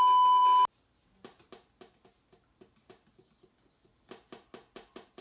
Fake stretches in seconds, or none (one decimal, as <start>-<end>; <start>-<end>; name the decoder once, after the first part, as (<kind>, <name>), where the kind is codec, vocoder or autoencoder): none